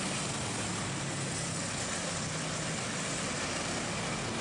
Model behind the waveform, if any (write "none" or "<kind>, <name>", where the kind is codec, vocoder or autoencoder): none